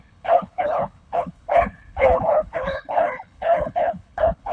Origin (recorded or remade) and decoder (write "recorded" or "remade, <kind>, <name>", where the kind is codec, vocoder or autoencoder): remade, codec, HILCodec